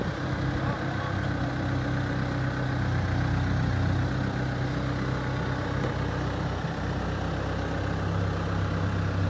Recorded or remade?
recorded